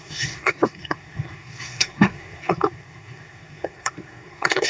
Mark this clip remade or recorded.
remade